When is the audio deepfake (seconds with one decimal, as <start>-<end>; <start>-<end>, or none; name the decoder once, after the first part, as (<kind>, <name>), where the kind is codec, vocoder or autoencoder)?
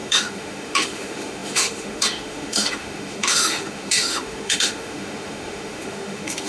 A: 0.0-6.5 (autoencoder, DAC-VAE)